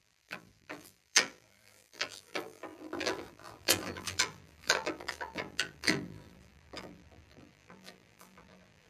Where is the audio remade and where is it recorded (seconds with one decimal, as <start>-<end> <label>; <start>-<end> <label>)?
0.0-8.9 remade